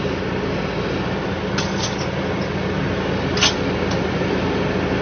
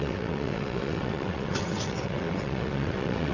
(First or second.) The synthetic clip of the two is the second